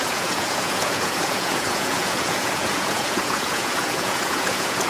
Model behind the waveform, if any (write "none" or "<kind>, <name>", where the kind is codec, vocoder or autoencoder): vocoder, Vocos